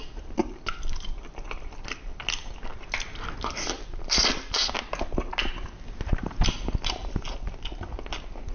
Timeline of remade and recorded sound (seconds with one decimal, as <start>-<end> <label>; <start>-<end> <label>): 0.0-8.5 recorded